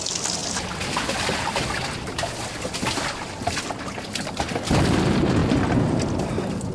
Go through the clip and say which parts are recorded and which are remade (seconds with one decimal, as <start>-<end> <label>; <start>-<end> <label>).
0.0-6.7 recorded